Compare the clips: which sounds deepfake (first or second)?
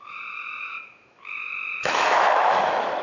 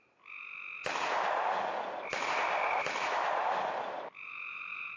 first